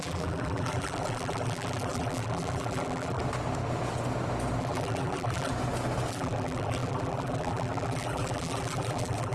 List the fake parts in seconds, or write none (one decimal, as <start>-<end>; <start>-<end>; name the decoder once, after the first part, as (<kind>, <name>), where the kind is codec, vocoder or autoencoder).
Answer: 0.0-3.2 (vocoder, BigVGAN v2); 4.6-5.5; 6.1-9.3

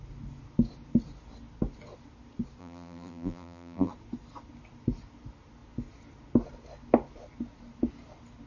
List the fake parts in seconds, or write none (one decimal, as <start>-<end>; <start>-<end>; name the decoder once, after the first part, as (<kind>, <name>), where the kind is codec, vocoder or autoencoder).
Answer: 2.6-3.9 (vocoder, BigVGAN v2)

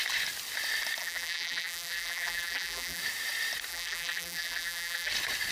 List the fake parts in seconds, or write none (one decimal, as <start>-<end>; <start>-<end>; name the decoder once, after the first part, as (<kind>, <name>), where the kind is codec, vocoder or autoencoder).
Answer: 1.0-3.0 (vocoder, BigVGAN v2); 3.7-5.1

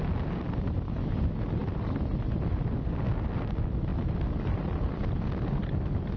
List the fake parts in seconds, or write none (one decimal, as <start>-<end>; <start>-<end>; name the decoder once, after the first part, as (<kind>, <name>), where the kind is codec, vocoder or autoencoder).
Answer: none

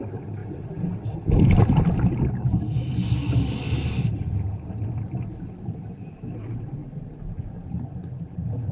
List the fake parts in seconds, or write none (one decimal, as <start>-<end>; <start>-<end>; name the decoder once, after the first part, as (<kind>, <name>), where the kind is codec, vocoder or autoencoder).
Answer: none

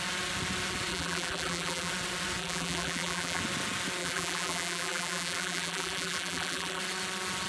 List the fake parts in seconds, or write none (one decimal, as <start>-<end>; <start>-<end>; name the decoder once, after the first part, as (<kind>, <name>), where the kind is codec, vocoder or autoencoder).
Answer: 0.9-1.9 (vocoder, BigVGAN v2); 2.4-3.4; 4.0-6.8

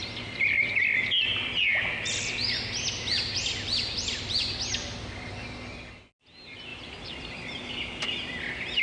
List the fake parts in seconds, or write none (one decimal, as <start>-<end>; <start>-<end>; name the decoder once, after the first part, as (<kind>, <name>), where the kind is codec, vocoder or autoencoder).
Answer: 6.7-8.8 (vocoder, BigVGAN v2)